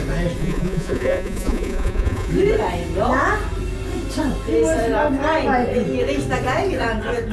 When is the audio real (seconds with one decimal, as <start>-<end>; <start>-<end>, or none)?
0.0-0.4; 2.3-7.3